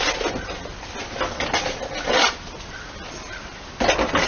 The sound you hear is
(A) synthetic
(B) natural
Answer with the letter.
B